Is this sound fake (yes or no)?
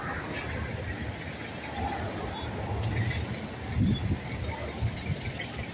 no